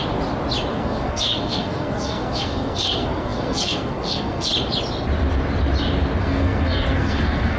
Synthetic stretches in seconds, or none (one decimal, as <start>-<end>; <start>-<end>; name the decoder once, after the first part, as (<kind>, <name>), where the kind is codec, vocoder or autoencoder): 0.7-4.5 (codec, SNAC); 6.2-7.6